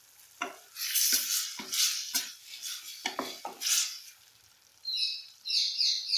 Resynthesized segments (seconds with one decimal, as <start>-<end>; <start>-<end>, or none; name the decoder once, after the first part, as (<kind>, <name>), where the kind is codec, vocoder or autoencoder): 4.7-5.4 (vocoder, BigVGAN v2)